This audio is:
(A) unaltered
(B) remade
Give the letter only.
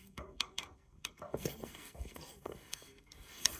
B